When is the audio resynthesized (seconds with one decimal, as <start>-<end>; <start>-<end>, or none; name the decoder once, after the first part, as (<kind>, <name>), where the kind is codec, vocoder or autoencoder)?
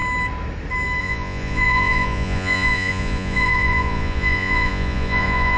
1.0-5.6 (vocoder, Vocos)